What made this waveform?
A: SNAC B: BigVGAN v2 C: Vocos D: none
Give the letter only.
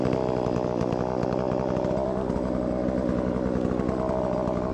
D